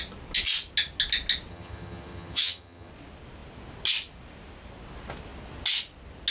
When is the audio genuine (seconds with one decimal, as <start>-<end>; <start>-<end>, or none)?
0.0-1.5; 2.9-6.3